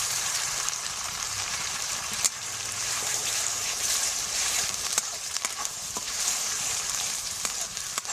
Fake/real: fake